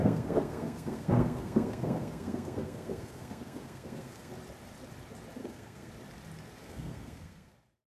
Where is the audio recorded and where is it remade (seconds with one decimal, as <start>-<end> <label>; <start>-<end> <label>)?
0.0-4.3 remade; 4.3-5.4 recorded; 5.4-5.9 remade; 5.9-6.6 recorded; 6.6-7.5 remade; 7.5-8.0 recorded